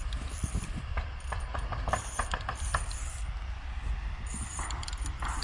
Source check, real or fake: fake